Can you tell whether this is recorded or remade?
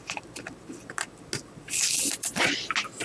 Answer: recorded